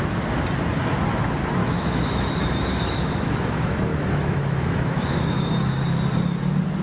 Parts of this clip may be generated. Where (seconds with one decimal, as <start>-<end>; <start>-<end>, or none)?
1.6-5.5

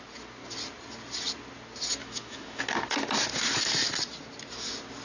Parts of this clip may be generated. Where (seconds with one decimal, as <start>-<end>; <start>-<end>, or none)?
2.0-2.6

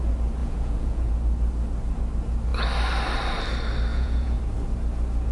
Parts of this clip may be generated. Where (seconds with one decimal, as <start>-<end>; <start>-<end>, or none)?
0.4-1.1; 3.9-4.4

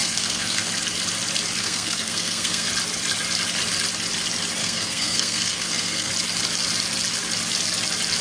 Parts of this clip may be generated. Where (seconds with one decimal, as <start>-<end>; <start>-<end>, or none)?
0.0-0.7; 1.6-2.7; 4.6-6.1

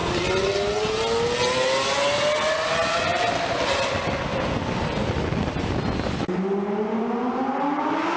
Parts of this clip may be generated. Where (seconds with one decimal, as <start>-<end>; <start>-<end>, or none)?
none

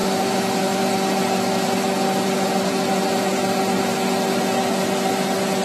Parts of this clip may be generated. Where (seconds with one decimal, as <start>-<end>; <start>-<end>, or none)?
none

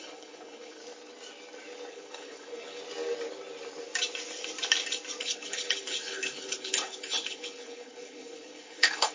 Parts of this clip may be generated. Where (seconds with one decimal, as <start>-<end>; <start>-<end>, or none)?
0.0-0.8; 1.9-2.8; 5.2-9.1